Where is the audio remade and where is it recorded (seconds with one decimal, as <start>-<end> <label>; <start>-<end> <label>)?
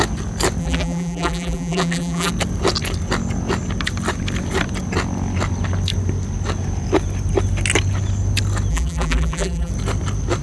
0.0-0.6 recorded; 0.6-2.3 remade; 2.3-8.7 recorded; 8.7-9.7 remade; 9.7-10.4 recorded